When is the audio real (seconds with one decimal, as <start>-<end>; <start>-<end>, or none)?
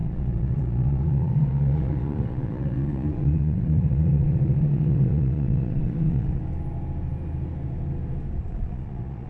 6.4-8.5